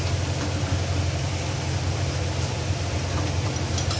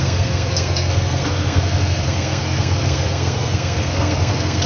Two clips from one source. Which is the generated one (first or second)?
second